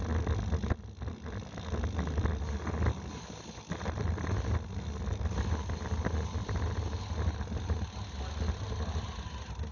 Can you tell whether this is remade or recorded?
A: recorded